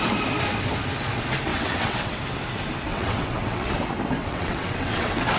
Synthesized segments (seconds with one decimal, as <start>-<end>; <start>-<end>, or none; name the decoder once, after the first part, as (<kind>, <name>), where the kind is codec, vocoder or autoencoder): 1.5-2.2 (vocoder, WaveNeXt); 2.9-3.7; 4.2-5.4